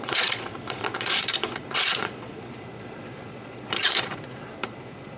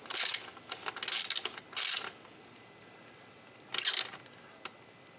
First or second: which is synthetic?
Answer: first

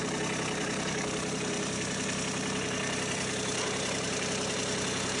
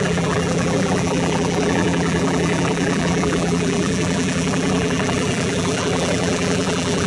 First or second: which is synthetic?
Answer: second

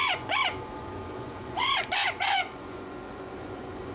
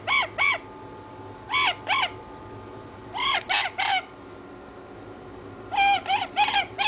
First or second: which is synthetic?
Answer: first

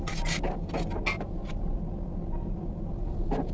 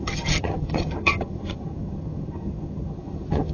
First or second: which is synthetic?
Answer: second